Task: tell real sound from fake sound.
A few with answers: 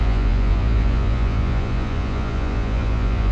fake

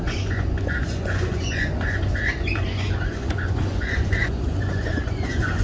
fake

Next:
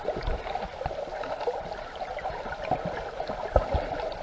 real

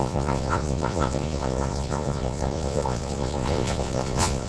fake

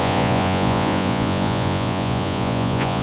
fake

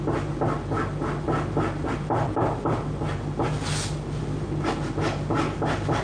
real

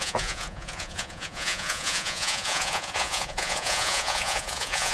fake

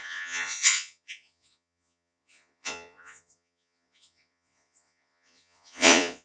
fake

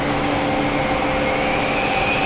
real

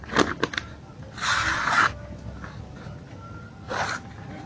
real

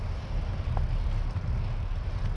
real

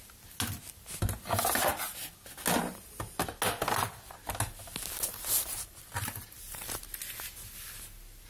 real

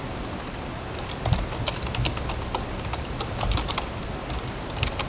real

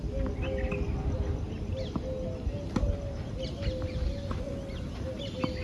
real